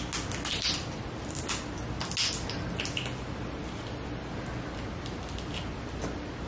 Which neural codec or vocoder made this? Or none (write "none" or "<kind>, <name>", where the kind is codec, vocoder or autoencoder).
none